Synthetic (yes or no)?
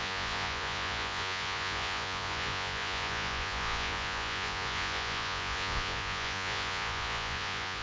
yes